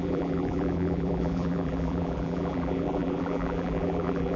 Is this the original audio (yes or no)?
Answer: no